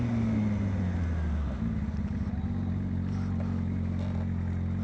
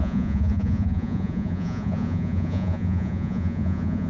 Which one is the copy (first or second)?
second